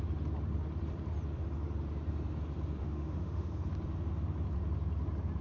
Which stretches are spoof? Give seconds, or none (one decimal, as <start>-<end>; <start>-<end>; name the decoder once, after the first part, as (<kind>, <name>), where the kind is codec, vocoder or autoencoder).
2.8-3.5 (autoencoder, DAC-VAE)